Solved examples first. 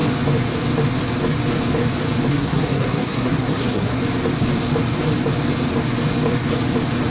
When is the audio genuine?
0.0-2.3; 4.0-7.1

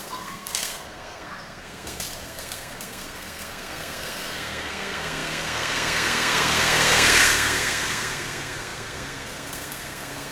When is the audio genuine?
none

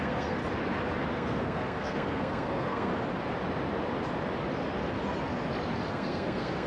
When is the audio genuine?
0.4-1.1; 2.9-5.9

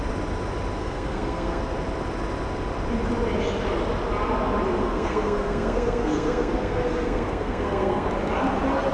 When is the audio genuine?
0.0-0.8; 1.6-4.8; 8.1-8.9

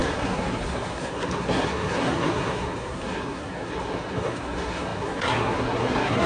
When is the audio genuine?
none